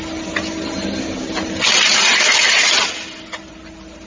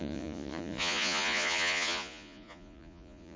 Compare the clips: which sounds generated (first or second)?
second